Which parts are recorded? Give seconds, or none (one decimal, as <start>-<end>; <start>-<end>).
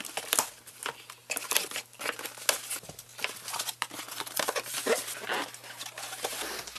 0.0-6.8